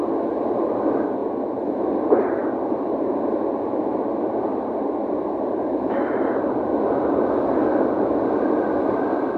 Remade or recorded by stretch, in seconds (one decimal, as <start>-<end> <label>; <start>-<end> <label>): 0.0-9.4 remade